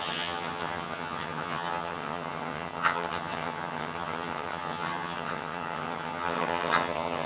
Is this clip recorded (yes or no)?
no